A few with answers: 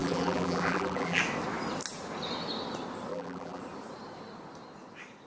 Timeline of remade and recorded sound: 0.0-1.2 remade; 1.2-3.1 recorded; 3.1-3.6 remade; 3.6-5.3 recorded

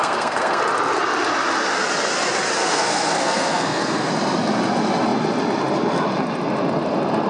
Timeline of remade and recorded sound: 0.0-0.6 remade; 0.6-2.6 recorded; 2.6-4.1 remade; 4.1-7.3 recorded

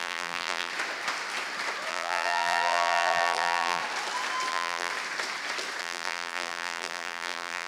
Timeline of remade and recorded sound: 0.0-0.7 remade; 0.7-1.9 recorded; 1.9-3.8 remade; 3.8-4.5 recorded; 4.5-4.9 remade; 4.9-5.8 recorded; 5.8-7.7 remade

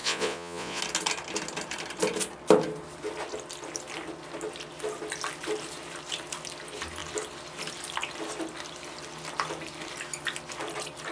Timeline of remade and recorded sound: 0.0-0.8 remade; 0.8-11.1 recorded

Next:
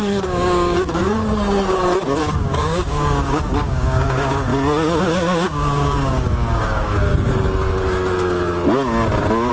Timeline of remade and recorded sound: 0.0-1.0 remade; 1.0-2.2 recorded; 2.2-4.5 remade; 4.5-5.0 recorded; 5.0-7.1 remade; 7.1-9.5 recorded

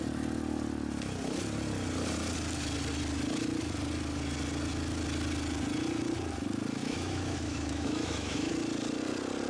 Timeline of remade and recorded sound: 0.0-6.8 recorded; 6.8-8.5 remade; 8.5-9.5 recorded

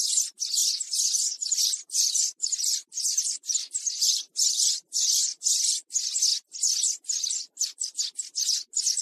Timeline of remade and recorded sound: 0.0-0.6 recorded; 0.6-5.6 remade; 5.6-9.0 recorded

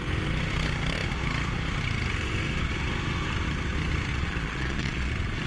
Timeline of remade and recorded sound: 0.0-4.1 recorded; 4.1-5.1 remade; 5.1-5.5 recorded